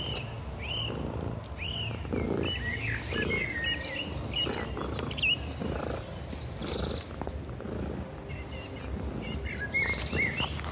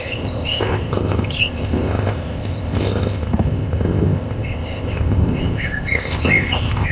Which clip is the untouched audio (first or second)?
first